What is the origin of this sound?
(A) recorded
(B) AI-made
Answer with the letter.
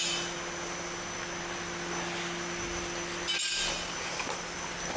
A